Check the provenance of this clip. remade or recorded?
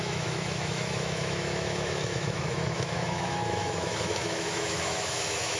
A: remade